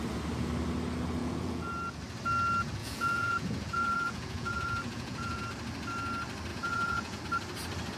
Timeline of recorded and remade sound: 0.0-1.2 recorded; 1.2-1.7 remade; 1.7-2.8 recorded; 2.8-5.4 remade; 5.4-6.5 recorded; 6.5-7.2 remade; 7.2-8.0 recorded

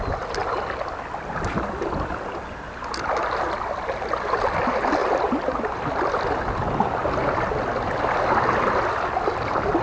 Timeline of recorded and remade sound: 0.0-9.8 recorded

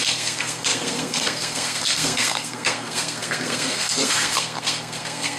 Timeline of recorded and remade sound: 0.0-5.4 remade